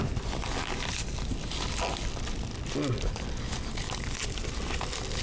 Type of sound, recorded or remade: recorded